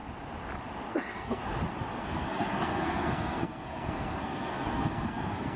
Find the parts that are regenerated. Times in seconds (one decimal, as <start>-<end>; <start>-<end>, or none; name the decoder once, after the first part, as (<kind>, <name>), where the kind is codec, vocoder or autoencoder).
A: 0.9-1.4 (codec, SNAC); 2.0-5.6

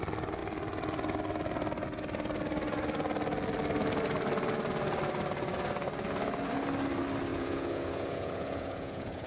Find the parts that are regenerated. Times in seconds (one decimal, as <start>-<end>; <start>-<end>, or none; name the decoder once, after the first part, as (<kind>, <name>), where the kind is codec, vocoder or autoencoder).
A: 7.3-9.3 (vocoder, Vocos)

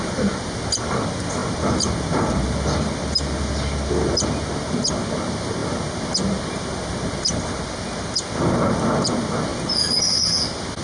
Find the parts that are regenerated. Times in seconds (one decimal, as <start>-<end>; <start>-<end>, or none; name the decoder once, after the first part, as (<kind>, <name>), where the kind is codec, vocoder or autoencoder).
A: none